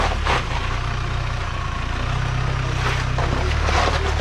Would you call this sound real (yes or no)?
yes